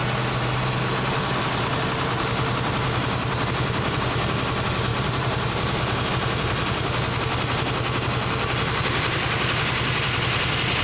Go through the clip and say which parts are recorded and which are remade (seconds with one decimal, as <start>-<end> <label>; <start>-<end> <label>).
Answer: 0.0-4.9 recorded; 4.9-6.1 remade; 6.1-10.8 recorded